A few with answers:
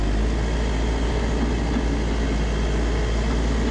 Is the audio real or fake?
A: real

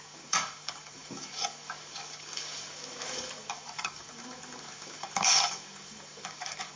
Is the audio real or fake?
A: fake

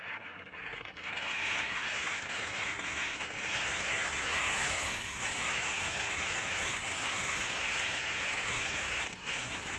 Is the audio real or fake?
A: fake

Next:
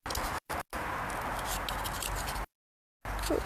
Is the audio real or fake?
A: real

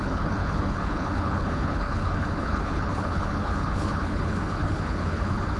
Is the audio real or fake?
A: fake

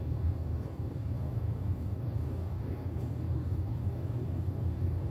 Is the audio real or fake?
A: fake